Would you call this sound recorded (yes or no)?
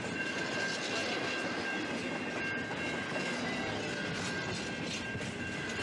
yes